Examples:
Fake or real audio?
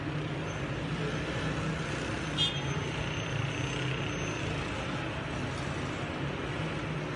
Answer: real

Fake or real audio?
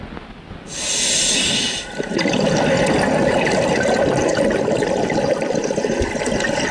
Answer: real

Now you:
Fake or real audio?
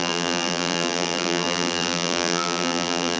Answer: fake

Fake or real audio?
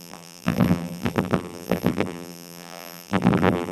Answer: fake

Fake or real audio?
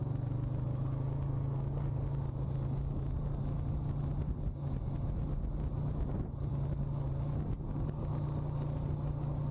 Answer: real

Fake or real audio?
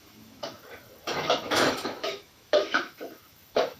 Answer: fake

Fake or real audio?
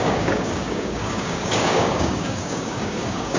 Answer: fake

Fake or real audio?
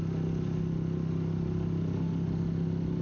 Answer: real